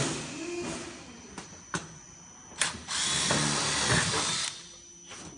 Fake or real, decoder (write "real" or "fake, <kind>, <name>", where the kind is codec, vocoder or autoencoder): real